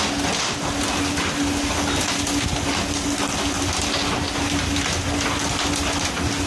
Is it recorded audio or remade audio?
recorded